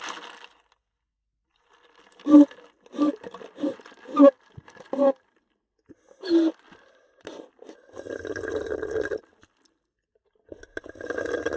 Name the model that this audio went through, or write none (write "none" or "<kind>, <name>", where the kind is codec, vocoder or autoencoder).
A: none